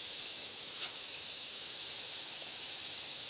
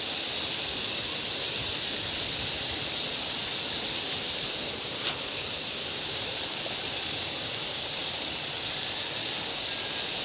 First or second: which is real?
second